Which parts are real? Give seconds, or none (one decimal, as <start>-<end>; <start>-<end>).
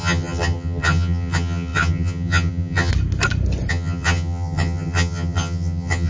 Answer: 2.9-3.7